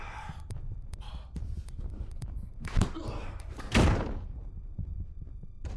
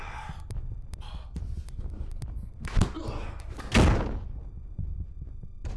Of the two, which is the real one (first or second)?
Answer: second